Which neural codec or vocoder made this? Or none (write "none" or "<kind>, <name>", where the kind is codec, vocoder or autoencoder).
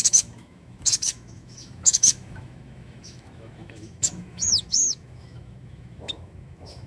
autoencoder, DAC-VAE